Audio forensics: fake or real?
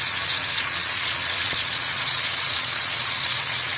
fake